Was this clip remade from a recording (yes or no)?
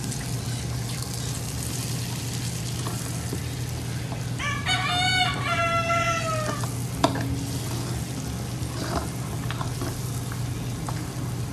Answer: no